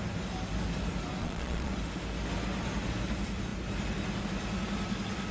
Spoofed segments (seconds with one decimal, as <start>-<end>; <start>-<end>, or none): 1.2-1.7